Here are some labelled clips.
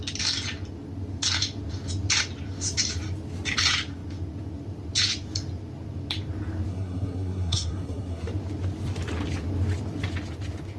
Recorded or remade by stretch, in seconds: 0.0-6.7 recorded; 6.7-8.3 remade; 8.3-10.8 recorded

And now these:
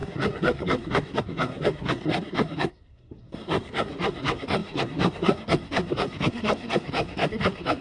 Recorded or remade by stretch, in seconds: 0.0-7.8 remade

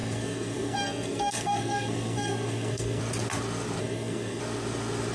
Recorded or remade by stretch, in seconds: 0.0-3.0 remade; 3.0-3.8 recorded; 3.8-4.4 remade; 4.4-5.1 recorded

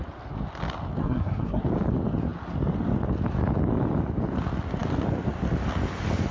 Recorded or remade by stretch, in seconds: 0.0-1.0 recorded; 1.0-1.6 remade; 1.6-6.3 recorded

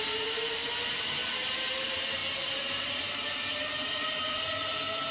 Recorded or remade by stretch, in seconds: 0.0-2.2 recorded; 2.2-2.8 remade; 2.8-5.1 recorded

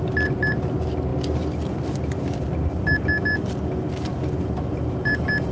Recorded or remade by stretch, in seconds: 0.0-5.5 recorded

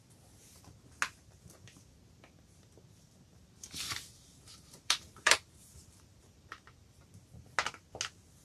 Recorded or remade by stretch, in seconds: 0.0-3.3 recorded; 3.3-7.1 remade; 7.1-8.4 recorded

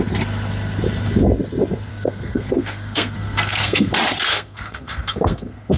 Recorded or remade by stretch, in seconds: 0.0-1.9 recorded; 1.9-3.9 remade; 3.9-4.3 recorded; 4.3-5.8 remade